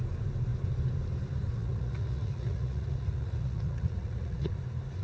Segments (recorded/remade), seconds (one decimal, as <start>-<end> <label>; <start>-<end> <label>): 0.0-1.6 recorded; 1.6-4.6 remade; 4.6-5.0 recorded